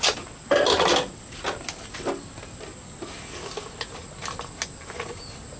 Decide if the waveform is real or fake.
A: real